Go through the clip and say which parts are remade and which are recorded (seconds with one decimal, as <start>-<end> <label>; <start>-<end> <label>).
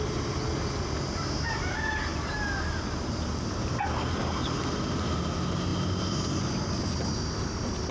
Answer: 0.0-7.9 recorded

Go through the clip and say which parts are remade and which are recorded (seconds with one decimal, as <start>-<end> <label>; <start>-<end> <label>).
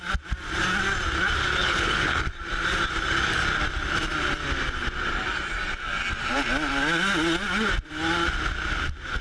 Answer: 0.0-1.6 recorded; 1.6-2.2 remade; 2.2-9.2 recorded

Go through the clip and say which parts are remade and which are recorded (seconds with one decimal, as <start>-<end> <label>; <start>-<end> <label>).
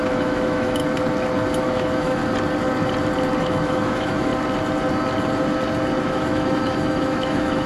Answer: 0.0-0.8 remade; 0.8-1.6 recorded; 1.6-2.2 remade; 2.2-3.4 recorded; 3.4-4.3 remade; 4.3-6.0 recorded; 6.0-7.7 remade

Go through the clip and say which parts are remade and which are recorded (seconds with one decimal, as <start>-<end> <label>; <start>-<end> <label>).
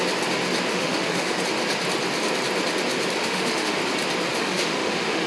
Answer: 0.0-0.7 recorded; 0.7-1.4 remade; 1.4-3.2 recorded; 3.2-3.8 remade; 3.8-4.3 recorded; 4.3-5.3 remade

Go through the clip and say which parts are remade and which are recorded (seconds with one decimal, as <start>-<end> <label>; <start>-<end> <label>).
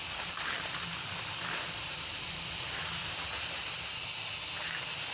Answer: 0.0-2.2 remade; 2.2-5.1 recorded